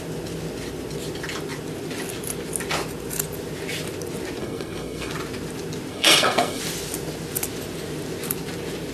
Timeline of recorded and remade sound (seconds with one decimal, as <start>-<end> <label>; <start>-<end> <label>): 0.0-4.4 recorded; 4.4-5.1 remade; 5.1-5.9 recorded; 5.9-6.6 remade; 6.6-8.9 recorded